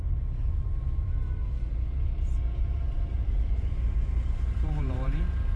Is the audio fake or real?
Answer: fake